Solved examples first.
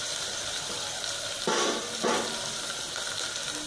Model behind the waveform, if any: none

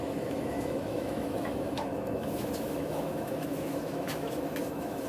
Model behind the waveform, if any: autoencoder, DAC-VAE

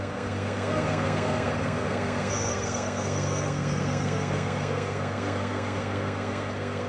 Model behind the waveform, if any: codec, SNAC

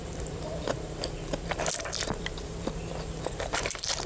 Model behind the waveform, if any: vocoder, BigVGAN v2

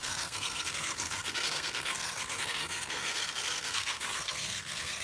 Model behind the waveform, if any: codec, SNAC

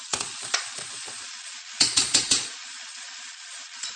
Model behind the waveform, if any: vocoder, Vocos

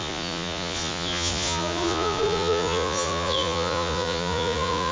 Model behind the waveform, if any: vocoder, Vocos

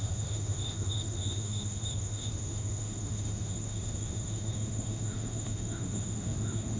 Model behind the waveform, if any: autoencoder, DAC-VAE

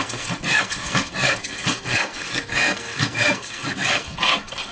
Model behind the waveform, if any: codec, SNAC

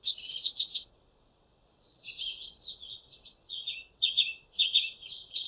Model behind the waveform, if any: vocoder, WaveNeXt